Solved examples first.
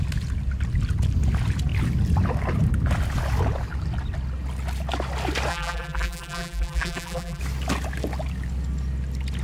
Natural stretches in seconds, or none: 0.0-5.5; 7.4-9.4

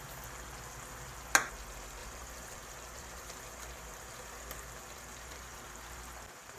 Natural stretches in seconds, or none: 0.0-2.0; 6.0-6.6

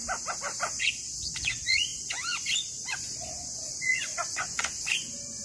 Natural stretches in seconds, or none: 0.0-0.8

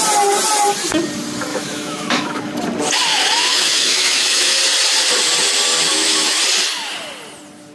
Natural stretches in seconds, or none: 0.0-1.5; 2.4-3.1; 4.6-5.9; 6.4-7.7

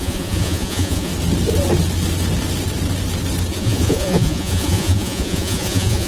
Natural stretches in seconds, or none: 1.1-3.5

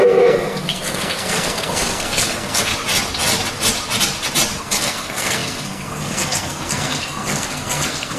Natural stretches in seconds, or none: 2.7-4.6

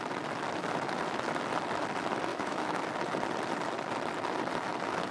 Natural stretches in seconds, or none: 0.0-2.3; 2.8-5.1